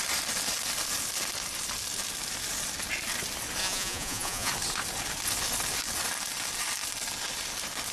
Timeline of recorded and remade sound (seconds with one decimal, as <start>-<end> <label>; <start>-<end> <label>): 0.0-3.6 recorded; 3.6-4.5 remade; 4.5-7.9 recorded